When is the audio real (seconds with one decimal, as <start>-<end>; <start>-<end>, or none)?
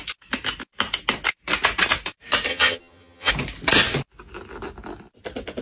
0.0-2.5; 3.3-5.6